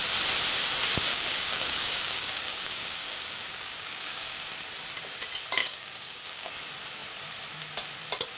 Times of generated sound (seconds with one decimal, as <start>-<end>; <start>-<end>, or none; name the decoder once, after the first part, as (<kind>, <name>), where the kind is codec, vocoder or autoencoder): 1.1-4.4 (codec, DAC); 5.6-6.5